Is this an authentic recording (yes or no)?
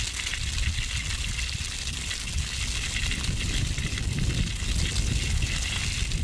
yes